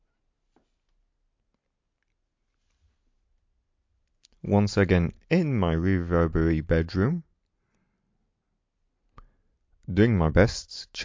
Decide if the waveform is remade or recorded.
recorded